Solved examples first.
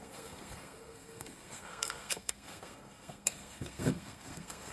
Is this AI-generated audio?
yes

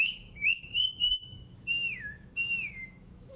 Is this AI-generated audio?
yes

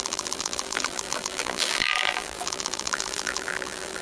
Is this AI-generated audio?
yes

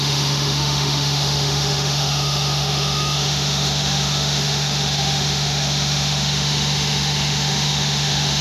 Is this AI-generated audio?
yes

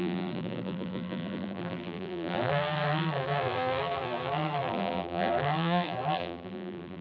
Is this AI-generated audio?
yes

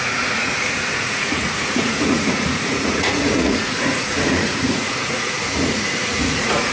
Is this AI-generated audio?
yes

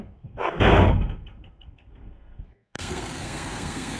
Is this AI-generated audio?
yes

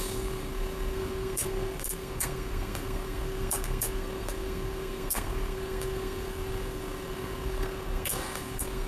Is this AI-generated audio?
yes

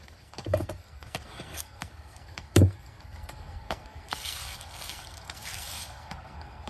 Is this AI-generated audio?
yes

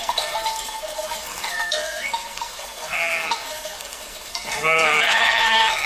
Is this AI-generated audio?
yes